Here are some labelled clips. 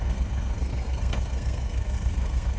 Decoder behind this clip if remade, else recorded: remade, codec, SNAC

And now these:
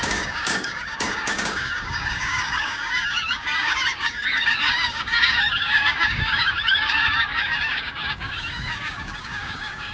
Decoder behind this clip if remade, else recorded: remade, codec, DAC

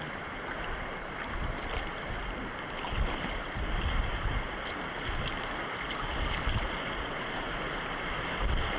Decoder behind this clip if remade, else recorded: recorded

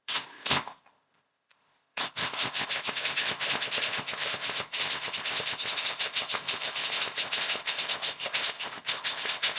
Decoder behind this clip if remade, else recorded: remade, codec, ZipCodec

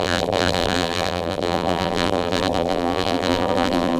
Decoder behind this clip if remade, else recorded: remade, vocoder, BigVGAN v2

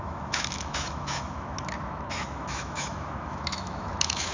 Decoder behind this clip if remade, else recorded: remade, autoencoder, DAC-VAE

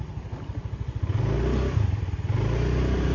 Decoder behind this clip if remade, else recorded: recorded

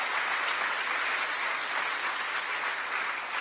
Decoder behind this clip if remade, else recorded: recorded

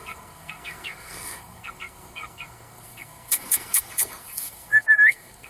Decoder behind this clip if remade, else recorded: remade, codec, SNAC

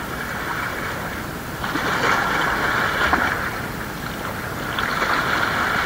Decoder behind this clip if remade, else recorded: recorded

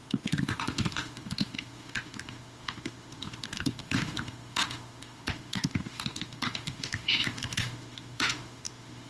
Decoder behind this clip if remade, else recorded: remade, autoencoder, DAC-VAE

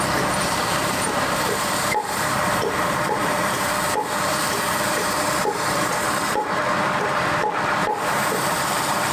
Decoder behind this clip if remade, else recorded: remade, vocoder, BigVGAN v2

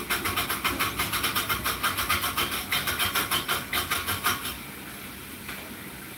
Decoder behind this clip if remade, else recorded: recorded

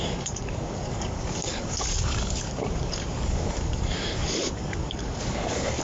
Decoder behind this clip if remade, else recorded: remade, codec, DAC